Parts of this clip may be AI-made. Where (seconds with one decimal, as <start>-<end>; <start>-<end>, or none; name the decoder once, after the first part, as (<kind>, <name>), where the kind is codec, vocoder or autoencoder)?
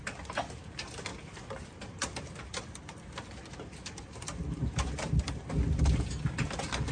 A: none